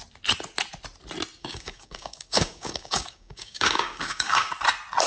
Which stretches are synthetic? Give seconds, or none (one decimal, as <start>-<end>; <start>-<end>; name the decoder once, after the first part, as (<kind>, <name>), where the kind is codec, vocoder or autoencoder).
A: 1.4-4.5 (codec, DAC)